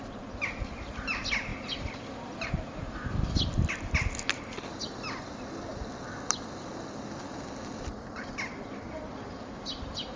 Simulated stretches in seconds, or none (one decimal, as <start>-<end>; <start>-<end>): none